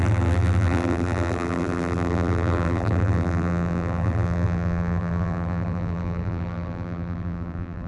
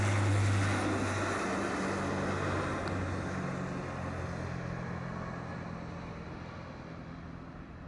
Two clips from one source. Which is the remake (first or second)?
first